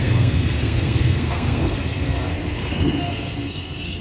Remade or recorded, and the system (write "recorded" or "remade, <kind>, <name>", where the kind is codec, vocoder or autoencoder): remade, codec, SNAC